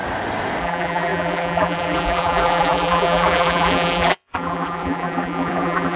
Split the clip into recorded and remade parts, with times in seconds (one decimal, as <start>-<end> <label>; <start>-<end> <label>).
0.0-0.6 recorded; 0.6-6.0 remade